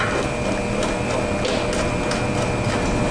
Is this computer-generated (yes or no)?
no